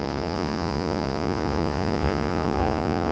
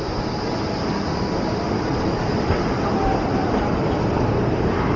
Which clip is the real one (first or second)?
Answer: second